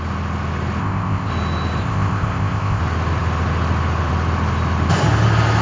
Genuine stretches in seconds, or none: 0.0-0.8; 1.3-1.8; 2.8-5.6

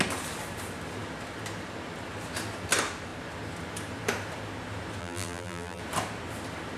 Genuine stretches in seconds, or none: 0.0-5.0; 5.8-6.8

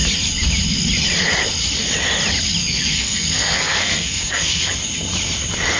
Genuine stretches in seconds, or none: 0.0-2.6; 4.7-5.8

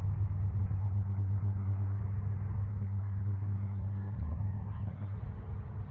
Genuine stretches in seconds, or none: 0.0-0.6; 2.0-2.7; 5.2-5.9

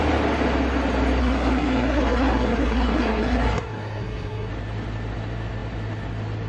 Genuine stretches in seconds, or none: 0.0-1.2; 4.5-6.5

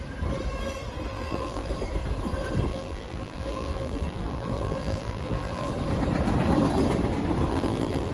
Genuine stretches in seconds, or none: 0.0-1.1; 1.7-2.7; 5.7-7.5

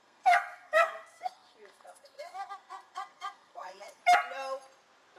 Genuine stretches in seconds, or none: 4.0-5.2